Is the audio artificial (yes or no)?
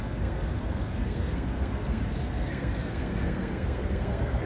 yes